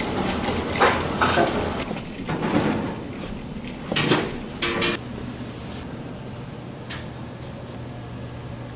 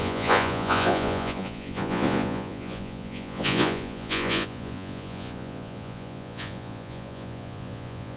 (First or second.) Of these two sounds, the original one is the first